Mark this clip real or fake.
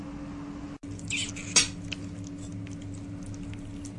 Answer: real